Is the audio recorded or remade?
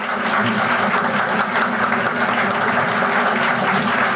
recorded